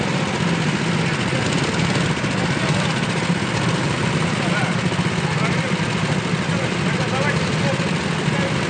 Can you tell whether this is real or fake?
real